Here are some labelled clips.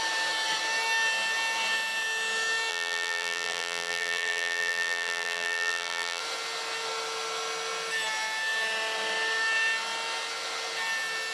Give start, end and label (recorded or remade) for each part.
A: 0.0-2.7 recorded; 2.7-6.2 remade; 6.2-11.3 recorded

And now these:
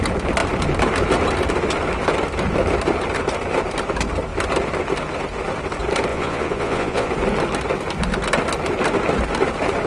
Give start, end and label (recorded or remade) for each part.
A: 0.0-6.1 recorded; 6.1-7.1 remade; 7.1-9.9 recorded

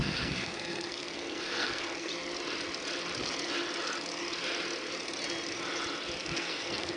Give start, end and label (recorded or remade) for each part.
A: 0.0-2.1 remade; 2.1-6.2 recorded; 6.2-7.0 remade

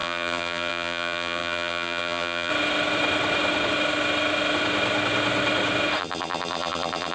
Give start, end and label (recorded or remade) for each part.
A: 0.0-2.5 remade; 2.5-6.0 recorded; 6.0-7.1 remade

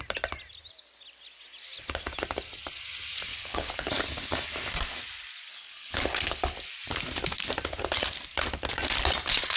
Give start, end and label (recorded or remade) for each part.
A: 0.0-3.3 recorded; 3.3-3.9 remade; 3.9-5.5 recorded; 5.5-6.4 remade; 6.4-9.6 recorded